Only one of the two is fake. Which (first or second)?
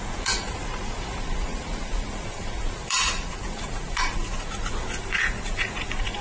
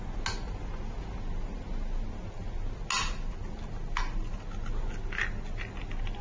first